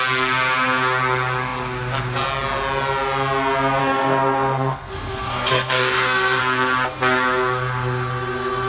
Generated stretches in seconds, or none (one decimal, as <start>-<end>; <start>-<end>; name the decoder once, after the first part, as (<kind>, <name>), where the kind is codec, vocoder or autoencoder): 3.8-6.4 (codec, SNAC)